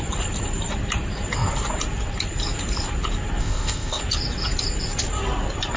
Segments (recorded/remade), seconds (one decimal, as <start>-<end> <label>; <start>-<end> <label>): 0.0-3.4 recorded; 3.4-4.0 remade; 4.0-5.8 recorded